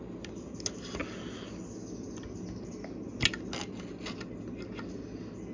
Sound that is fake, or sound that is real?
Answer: real